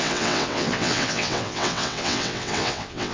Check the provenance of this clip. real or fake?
fake